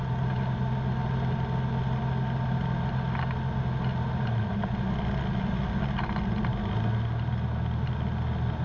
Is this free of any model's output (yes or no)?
yes